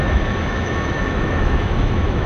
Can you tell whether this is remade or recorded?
remade